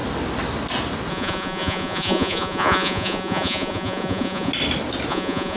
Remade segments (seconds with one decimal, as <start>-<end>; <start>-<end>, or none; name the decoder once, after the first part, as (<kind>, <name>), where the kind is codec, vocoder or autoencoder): 1.1-4.5 (vocoder, Vocos); 5.1-5.6